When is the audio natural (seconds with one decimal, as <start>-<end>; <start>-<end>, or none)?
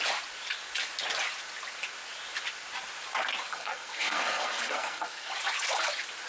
0.0-3.5; 5.3-6.3